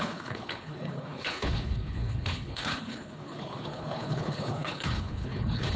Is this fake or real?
fake